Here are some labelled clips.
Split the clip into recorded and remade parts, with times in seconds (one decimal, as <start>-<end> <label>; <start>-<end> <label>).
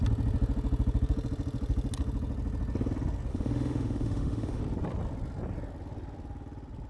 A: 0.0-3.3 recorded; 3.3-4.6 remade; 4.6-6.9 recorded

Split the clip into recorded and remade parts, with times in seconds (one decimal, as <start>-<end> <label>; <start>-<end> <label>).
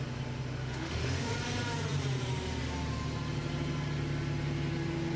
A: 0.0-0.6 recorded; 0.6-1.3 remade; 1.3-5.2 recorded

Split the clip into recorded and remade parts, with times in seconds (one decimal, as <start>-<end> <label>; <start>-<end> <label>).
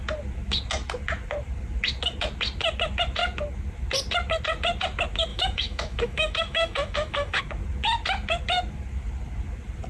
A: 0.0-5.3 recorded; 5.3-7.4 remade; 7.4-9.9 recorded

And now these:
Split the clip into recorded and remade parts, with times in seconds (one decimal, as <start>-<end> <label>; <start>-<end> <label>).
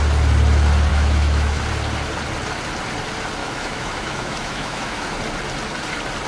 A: 0.0-0.9 recorded; 0.9-1.6 remade; 1.6-3.4 recorded; 3.4-5.2 remade; 5.2-6.3 recorded